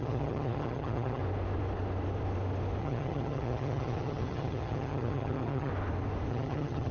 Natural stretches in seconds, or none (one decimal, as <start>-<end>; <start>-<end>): 1.2-2.8; 5.7-6.3